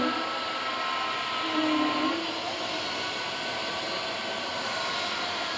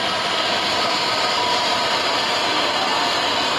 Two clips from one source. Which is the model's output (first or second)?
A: second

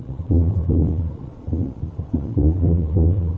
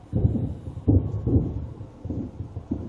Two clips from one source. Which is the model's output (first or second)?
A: first